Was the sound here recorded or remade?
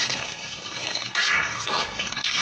remade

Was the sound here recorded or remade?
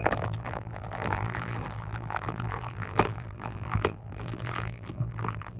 remade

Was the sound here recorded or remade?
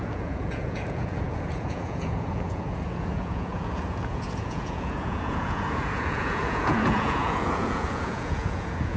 remade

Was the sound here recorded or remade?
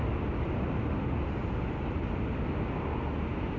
recorded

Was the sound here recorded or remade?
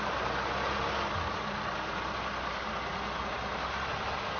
recorded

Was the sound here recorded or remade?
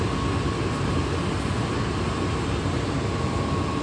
recorded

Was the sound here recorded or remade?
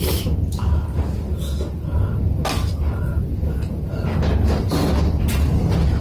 recorded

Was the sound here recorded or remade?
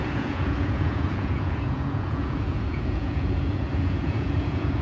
remade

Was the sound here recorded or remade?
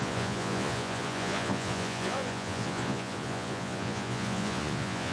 remade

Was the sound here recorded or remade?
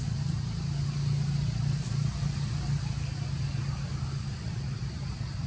recorded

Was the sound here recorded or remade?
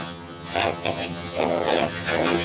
remade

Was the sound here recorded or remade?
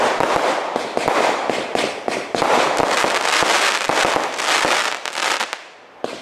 remade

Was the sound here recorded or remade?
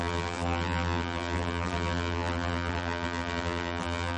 remade